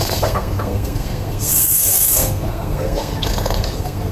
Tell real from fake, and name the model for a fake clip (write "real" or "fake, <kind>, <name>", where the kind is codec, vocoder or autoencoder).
fake, codec, SNAC